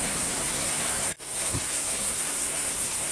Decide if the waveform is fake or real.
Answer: fake